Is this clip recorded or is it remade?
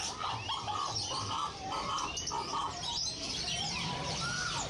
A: remade